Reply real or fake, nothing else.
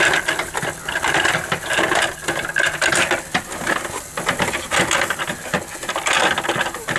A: real